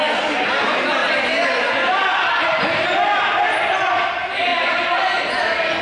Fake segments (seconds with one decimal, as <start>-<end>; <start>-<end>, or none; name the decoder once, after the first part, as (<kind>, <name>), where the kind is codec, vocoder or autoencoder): none